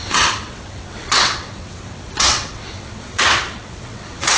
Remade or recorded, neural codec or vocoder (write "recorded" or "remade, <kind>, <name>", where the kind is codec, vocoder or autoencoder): remade, vocoder, WaveNeXt